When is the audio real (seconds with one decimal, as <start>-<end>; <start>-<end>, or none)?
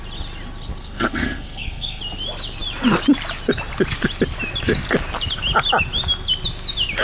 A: 0.0-0.8; 2.0-7.0